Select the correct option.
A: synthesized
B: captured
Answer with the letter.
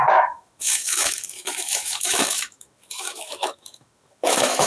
A